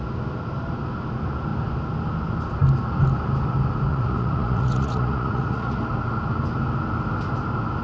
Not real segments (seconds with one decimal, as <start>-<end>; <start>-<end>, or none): 3.9-5.8